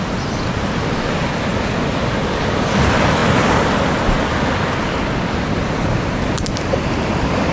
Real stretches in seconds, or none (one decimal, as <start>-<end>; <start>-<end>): 0.0-7.5